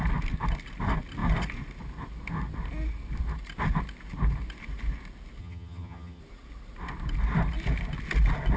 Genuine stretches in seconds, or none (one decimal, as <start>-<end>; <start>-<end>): 0.0-5.4; 6.2-8.6